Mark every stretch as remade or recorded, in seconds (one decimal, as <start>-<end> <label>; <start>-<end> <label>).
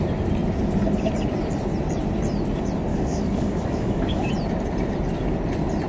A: 0.0-2.9 recorded; 2.9-4.3 remade; 4.3-5.9 recorded